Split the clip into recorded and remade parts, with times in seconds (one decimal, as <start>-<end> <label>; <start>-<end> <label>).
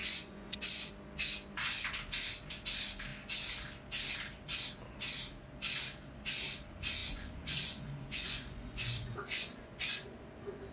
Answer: 0.0-0.9 remade; 0.9-7.0 recorded; 7.0-10.2 remade; 10.2-10.7 recorded